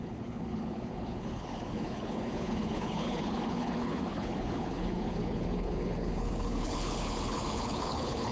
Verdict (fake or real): fake